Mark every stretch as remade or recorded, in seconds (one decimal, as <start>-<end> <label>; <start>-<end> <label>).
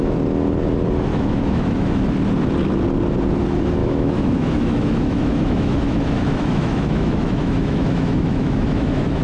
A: 0.0-1.1 recorded; 1.1-2.0 remade; 2.0-3.8 recorded; 3.8-9.2 remade